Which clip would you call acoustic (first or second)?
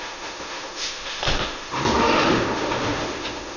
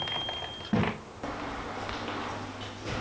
second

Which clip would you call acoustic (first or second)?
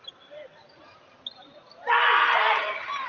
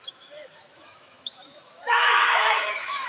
first